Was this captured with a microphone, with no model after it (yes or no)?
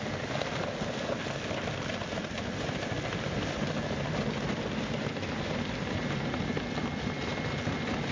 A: yes